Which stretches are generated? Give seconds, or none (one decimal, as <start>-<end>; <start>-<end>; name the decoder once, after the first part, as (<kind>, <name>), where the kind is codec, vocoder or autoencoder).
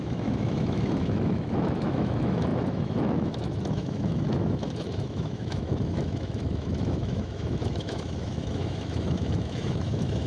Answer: 0.0-10.3 (autoencoder, DAC-VAE)